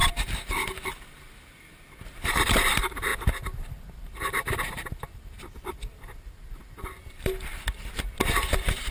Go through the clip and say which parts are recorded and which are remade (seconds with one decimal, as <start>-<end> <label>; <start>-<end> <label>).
0.0-0.5 remade; 0.5-8.9 recorded